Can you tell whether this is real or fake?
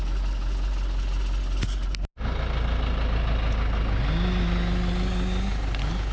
real